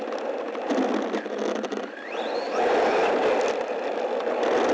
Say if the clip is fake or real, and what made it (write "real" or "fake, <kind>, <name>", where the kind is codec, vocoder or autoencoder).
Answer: real